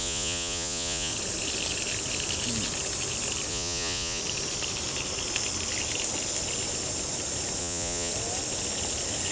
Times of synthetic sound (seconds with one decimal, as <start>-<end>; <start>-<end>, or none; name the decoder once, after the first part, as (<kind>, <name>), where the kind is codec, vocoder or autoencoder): 0.0-1.1 (vocoder, Vocos); 3.5-4.2; 7.6-8.1